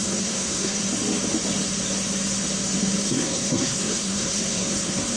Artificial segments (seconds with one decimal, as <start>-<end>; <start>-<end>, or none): 0.0-0.8; 3.0-5.2